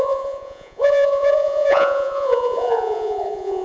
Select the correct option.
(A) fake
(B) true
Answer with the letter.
A